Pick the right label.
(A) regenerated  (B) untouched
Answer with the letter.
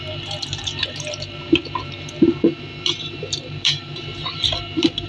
A